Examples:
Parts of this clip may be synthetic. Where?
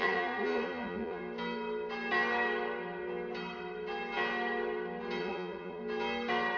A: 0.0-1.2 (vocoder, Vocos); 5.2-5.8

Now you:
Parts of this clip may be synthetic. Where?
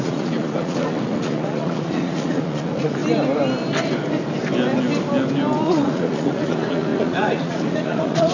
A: 0.0-3.0 (vocoder, Vocos); 5.6-8.3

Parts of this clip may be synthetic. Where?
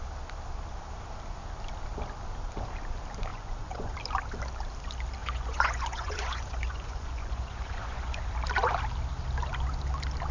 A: 3.3-3.9 (vocoder, Vocos); 5.2-8.2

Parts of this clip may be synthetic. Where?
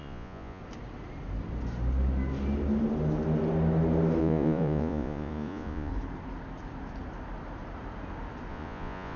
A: 0.0-0.6 (vocoder, Vocos); 4.2-5.9; 8.5-9.2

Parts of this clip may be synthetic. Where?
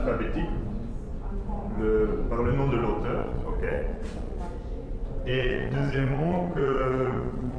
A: 3.2-4.4 (vocoder, Vocos); 5.3-7.6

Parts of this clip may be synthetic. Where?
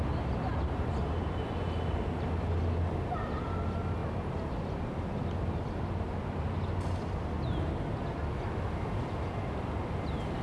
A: none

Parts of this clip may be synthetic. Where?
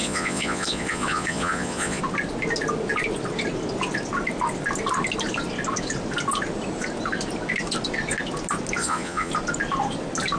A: 0.0-2.0 (vocoder, Vocos); 8.8-9.3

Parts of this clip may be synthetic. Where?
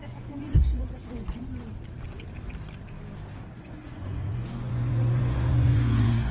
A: 0.0-1.4 (vocoder, Vocos); 3.5-6.3